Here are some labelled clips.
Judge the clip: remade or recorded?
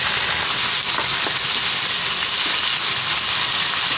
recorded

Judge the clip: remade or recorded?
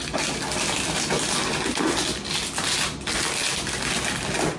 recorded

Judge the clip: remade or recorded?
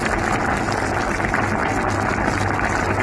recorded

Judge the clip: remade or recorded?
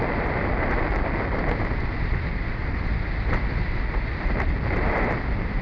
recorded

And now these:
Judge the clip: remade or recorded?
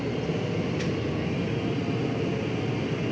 recorded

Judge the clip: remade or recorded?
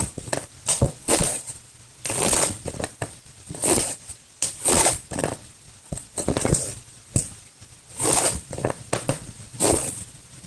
remade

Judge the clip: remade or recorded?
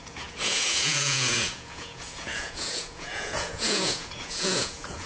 remade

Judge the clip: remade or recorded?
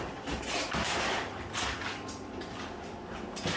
recorded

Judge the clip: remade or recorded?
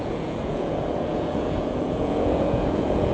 remade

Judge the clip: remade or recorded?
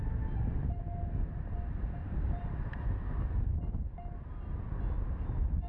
recorded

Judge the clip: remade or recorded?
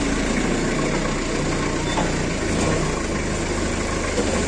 recorded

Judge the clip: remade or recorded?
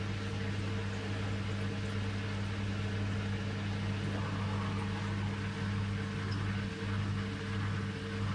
recorded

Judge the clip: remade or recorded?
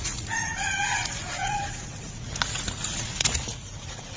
remade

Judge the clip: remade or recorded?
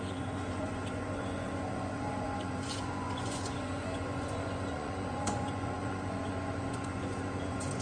remade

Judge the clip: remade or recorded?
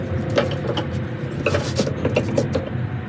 recorded